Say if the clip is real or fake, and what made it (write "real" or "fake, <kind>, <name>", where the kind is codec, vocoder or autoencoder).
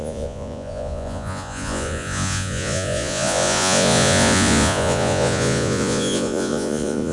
fake, vocoder, Vocos